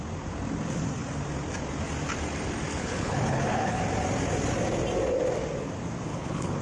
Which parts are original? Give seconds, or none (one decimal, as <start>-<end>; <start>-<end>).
0.0-2.7; 3.8-6.1